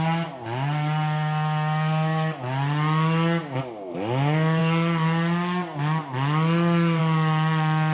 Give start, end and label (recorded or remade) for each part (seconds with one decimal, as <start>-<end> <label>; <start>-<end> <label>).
0.0-7.9 recorded